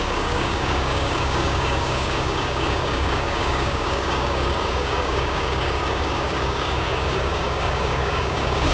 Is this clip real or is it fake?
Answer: fake